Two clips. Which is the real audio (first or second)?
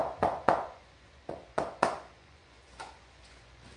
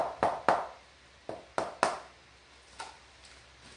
second